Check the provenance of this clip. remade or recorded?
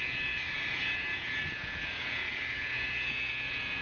remade